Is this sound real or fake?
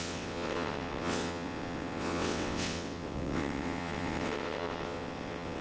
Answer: fake